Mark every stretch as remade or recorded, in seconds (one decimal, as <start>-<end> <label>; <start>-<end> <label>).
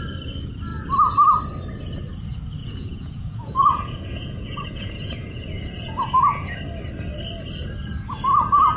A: 0.0-2.6 recorded; 2.6-6.6 remade; 6.6-8.8 recorded